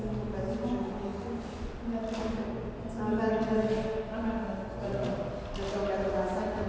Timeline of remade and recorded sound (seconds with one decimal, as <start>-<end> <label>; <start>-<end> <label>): 0.0-6.7 recorded